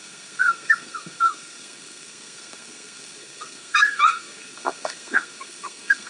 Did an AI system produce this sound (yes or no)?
yes